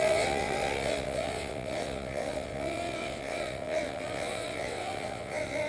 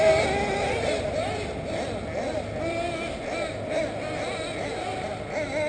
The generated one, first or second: first